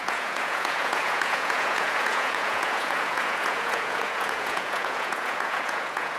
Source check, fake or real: fake